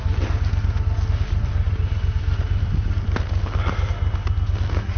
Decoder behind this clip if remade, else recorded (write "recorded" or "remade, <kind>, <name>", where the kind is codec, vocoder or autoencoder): recorded